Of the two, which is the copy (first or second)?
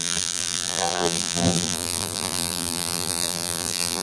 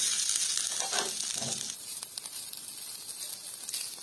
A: first